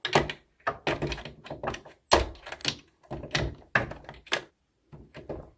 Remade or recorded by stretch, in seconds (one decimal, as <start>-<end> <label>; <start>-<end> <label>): 0.0-5.6 recorded